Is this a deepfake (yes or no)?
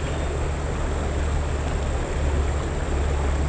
no